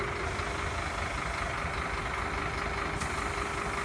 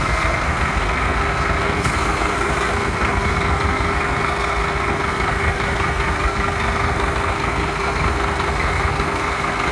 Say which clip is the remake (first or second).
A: second